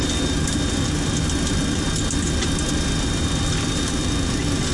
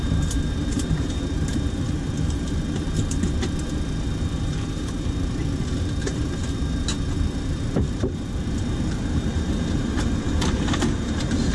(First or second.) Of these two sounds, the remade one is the second